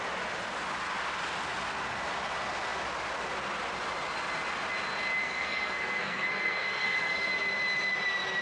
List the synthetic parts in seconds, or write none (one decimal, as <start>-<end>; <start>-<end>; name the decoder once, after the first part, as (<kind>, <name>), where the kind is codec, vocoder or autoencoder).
5.2-7.3 (codec, SNAC)